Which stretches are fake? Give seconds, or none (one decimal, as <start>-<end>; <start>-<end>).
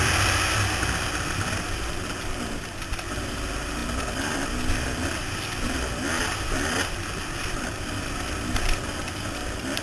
none